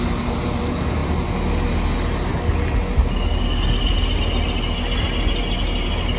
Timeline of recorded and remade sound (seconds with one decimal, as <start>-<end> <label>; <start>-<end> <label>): 0.0-6.2 recorded

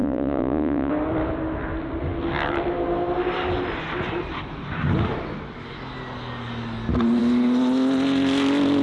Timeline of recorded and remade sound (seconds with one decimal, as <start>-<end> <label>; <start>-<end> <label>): 0.0-0.9 remade; 0.9-8.8 recorded

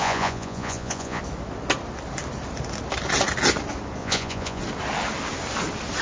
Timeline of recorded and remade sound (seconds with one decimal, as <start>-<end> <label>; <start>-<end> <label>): 0.0-1.2 remade; 1.2-4.0 recorded; 4.0-4.6 remade; 4.6-6.0 recorded

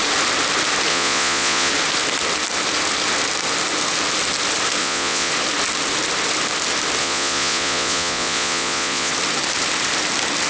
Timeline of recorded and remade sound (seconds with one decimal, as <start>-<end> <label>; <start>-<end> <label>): 0.0-0.9 recorded; 0.9-1.7 remade; 1.7-4.8 recorded; 4.8-5.3 remade; 5.3-7.0 recorded; 7.0-9.1 remade; 9.1-10.5 recorded

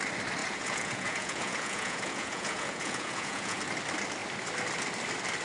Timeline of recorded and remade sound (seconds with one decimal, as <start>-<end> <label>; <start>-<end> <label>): 0.0-0.4 recorded; 0.4-3.6 remade; 3.6-5.4 recorded

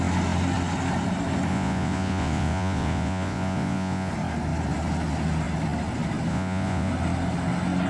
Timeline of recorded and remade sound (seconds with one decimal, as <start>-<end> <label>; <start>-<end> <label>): 0.0-1.5 recorded; 1.5-4.1 remade; 4.1-6.3 recorded; 6.3-6.9 remade; 6.9-7.9 recorded

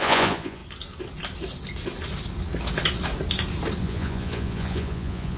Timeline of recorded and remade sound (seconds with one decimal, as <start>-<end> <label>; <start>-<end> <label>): 0.0-0.6 remade; 0.6-3.8 recorded; 3.8-5.4 remade

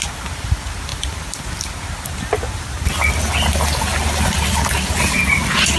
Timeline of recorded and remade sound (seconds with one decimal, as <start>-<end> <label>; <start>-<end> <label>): 0.0-5.8 recorded